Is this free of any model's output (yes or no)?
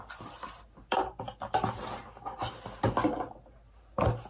yes